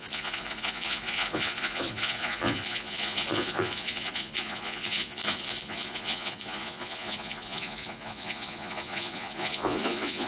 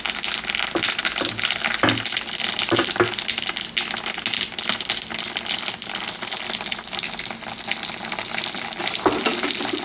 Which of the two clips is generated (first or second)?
first